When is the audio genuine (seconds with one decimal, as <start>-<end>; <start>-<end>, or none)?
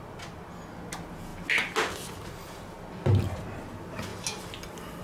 0.0-5.0